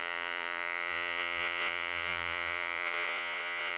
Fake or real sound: fake